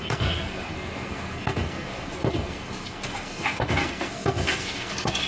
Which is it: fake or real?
fake